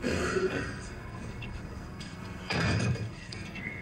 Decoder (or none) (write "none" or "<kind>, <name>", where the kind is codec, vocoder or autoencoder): codec, SNAC